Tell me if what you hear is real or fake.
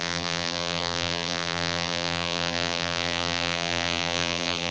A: fake